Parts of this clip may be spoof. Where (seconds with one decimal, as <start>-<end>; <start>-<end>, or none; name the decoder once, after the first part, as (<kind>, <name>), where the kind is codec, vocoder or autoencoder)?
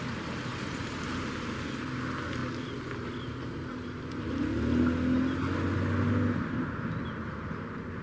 none